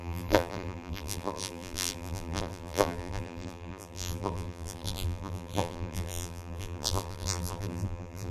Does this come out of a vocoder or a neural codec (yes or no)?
yes